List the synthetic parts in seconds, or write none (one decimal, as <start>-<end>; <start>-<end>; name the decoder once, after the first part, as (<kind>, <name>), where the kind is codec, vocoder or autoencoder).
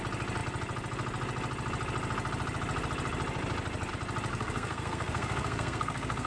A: 4.3-6.3 (codec, SNAC)